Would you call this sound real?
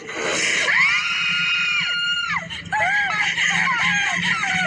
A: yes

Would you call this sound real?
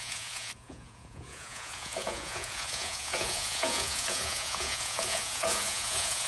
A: no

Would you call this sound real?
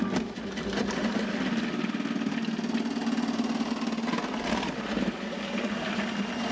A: yes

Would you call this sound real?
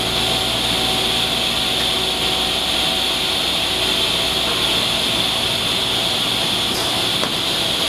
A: yes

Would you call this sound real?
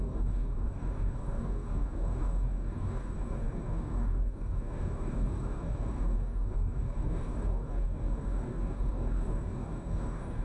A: no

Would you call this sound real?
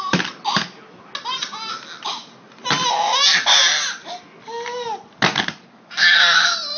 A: yes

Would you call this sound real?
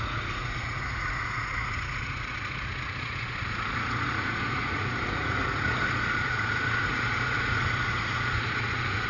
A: no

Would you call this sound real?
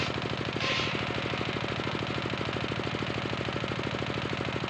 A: yes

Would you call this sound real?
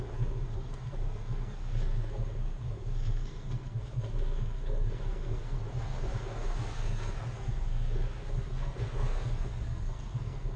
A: no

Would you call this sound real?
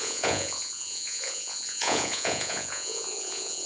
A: no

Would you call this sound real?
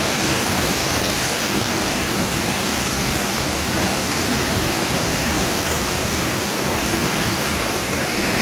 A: no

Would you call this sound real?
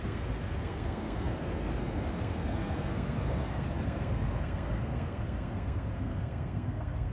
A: no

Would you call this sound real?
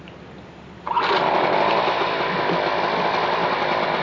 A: yes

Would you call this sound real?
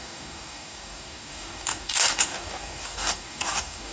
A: no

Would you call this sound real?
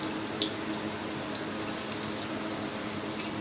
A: yes